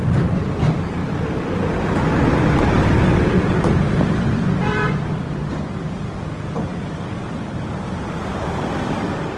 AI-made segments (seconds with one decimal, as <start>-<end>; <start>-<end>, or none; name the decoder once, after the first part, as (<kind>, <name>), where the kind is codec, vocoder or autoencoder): 1.0-2.8 (vocoder, BigVGAN v2); 6.7-8.1